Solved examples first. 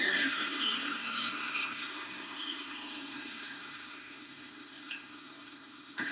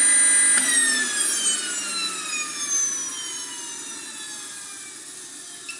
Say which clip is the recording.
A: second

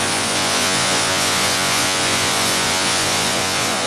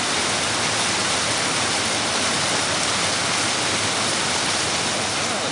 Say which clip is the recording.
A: second